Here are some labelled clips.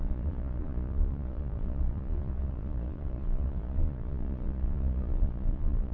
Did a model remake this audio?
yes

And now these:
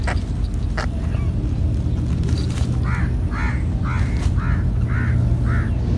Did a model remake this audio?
no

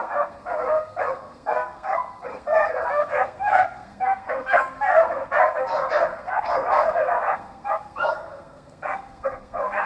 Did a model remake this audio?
yes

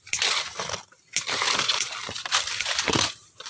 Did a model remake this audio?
no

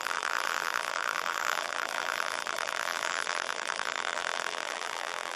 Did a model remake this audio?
yes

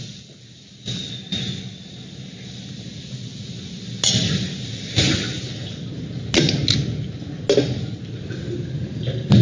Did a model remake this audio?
no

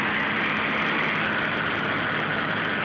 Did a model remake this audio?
no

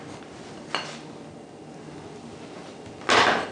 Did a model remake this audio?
no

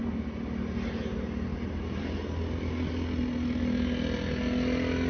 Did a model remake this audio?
no